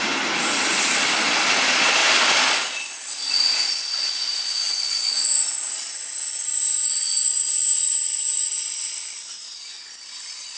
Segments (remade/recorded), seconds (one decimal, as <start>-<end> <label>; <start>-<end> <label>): 0.0-10.6 recorded

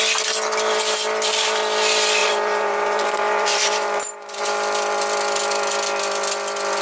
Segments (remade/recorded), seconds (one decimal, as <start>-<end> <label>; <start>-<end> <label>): 0.0-2.2 recorded; 2.2-4.4 remade; 4.4-6.8 recorded

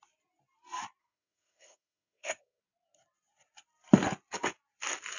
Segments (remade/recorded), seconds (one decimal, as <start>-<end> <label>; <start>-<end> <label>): 0.0-1.0 recorded; 1.0-2.6 remade; 2.6-5.2 recorded

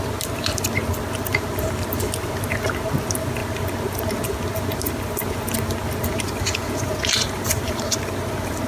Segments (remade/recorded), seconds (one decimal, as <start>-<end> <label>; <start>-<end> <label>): 0.0-8.7 recorded

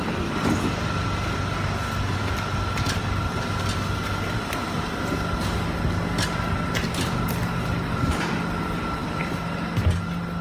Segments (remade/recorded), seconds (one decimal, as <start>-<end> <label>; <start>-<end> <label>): 0.0-10.4 recorded